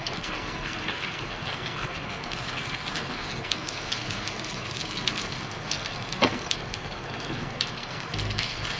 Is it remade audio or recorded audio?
remade